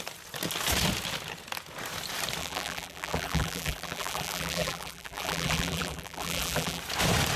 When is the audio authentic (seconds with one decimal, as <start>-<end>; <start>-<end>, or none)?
0.0-2.4; 6.8-7.4